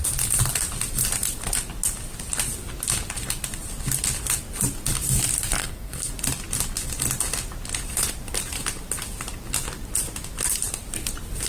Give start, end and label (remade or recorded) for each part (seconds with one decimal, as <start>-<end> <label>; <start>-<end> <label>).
0.0-5.6 recorded; 5.6-6.1 remade; 6.1-11.5 recorded